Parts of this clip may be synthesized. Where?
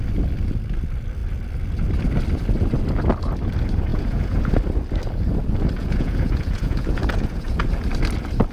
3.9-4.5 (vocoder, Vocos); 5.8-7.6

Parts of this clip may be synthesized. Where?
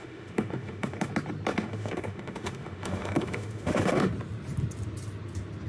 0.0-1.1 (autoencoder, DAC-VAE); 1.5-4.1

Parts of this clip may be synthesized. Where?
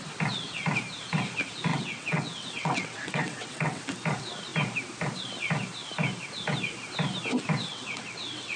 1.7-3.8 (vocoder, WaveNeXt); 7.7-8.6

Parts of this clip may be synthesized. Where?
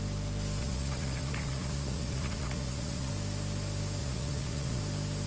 0.6-3.1 (vocoder, Vocos); 4.0-4.8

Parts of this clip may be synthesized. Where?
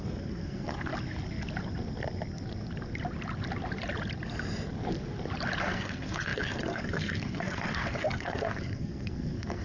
0.0-0.9 (codec, SNAC); 5.6-9.6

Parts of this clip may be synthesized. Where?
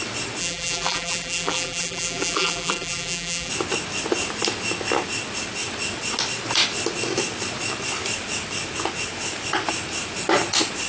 0.4-3.5 (vocoder, BigVGAN v2)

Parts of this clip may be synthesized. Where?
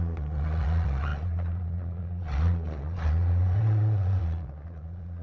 0.0-5.2 (vocoder, Vocos)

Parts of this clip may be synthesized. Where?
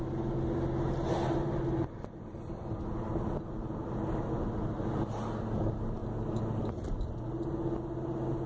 none